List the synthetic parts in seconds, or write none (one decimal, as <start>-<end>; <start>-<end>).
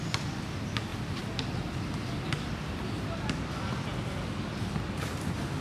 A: none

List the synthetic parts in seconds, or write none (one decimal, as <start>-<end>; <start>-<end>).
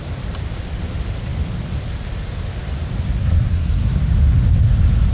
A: 3.2-4.0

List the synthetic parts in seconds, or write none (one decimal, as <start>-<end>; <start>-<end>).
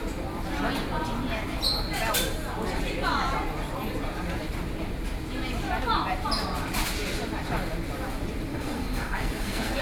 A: 8.5-9.8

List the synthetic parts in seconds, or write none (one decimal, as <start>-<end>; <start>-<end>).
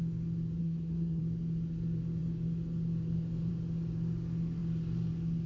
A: 0.6-1.2